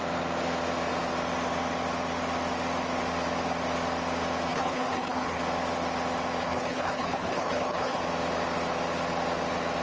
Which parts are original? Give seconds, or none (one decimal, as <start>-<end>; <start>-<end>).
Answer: 0.0-4.5; 5.4-6.4; 8.0-9.8